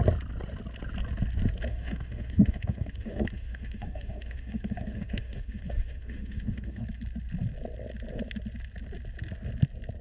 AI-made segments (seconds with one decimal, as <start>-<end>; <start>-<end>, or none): 1.7-6.8